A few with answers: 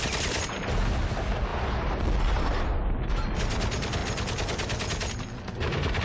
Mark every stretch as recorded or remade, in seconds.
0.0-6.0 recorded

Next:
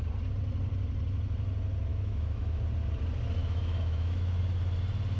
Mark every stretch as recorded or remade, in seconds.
0.0-1.9 recorded; 1.9-2.6 remade; 2.6-3.4 recorded; 3.4-4.4 remade; 4.4-5.2 recorded

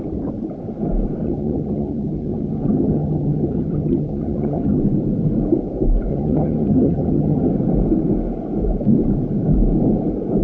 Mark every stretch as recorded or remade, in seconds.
0.0-1.2 recorded; 1.2-4.8 remade; 4.8-6.1 recorded; 6.1-7.5 remade; 7.5-10.4 recorded

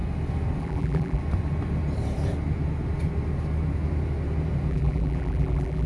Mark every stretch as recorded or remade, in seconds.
0.0-0.6 recorded; 0.6-1.2 remade; 1.2-4.7 recorded; 4.7-5.9 remade

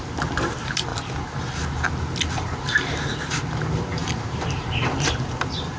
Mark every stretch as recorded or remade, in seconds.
0.0-0.9 remade; 0.9-2.3 recorded; 2.3-5.8 remade